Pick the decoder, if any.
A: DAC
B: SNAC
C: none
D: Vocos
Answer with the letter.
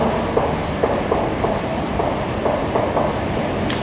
C